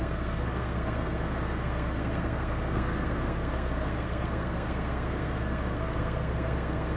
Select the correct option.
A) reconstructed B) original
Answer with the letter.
A